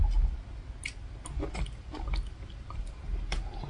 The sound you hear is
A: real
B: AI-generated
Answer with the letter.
A